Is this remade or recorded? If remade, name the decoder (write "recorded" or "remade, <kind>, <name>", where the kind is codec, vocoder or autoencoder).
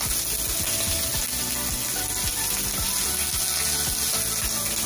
recorded